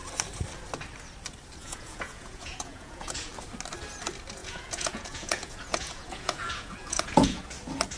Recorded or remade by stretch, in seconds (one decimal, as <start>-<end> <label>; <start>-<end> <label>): 0.0-1.6 recorded; 1.6-3.3 remade; 3.3-4.4 recorded; 4.4-7.4 remade; 7.4-8.0 recorded

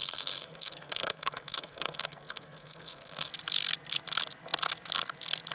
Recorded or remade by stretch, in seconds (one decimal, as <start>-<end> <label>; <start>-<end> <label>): 0.0-3.3 remade; 3.3-5.5 recorded